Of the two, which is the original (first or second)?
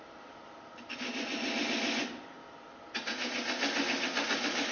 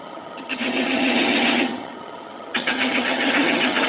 first